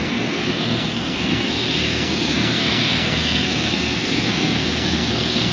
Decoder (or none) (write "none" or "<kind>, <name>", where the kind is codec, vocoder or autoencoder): codec, SNAC